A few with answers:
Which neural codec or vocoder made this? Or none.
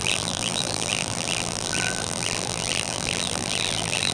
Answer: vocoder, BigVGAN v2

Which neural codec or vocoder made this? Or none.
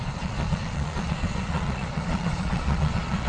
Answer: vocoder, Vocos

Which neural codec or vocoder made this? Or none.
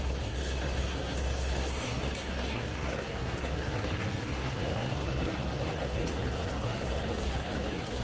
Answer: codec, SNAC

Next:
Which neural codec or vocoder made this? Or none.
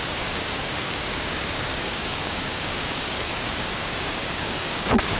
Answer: codec, DAC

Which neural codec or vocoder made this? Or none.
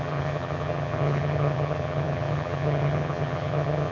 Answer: vocoder, HiFi-GAN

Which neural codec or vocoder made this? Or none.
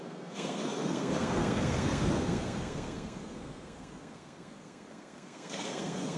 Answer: codec, SNAC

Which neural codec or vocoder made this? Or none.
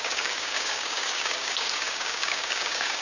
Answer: codec, DAC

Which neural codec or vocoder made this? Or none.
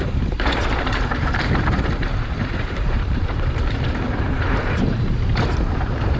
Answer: vocoder, BigVGAN v2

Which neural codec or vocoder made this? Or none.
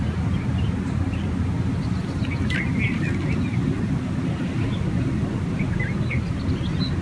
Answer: none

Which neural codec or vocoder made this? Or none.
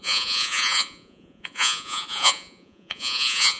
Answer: vocoder, Vocos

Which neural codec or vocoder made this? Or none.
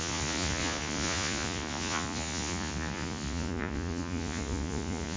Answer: vocoder, Vocos